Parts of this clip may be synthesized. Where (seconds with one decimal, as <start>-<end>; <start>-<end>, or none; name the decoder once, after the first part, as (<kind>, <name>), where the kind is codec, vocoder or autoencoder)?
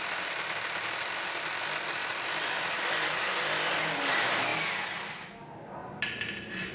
2.0-2.9 (vocoder, BigVGAN v2); 4.5-5.1; 5.8-6.7